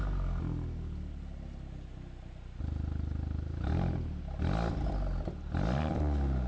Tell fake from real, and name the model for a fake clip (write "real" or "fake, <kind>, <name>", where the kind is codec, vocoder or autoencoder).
real